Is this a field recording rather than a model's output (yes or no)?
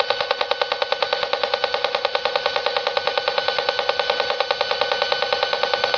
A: yes